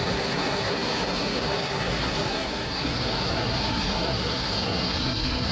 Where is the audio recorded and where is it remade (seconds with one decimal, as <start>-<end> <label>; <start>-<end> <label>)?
0.0-5.5 remade